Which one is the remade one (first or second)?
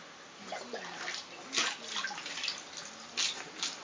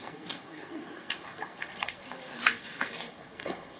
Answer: second